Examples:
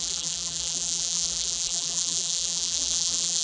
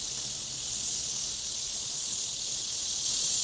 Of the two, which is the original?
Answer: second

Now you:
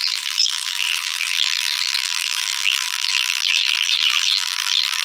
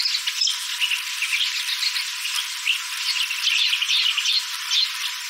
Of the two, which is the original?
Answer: second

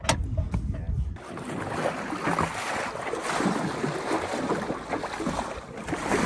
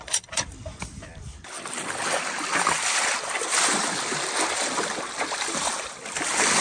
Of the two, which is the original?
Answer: first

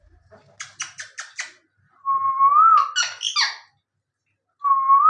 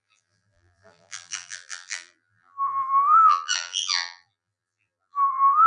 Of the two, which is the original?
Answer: first